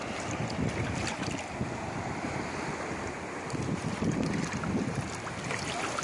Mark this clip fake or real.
real